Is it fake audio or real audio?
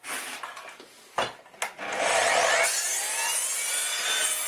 real